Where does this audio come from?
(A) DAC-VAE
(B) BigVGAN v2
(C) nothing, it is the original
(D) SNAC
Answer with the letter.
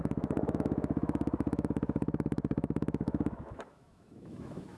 A